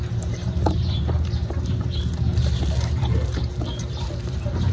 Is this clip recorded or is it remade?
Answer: remade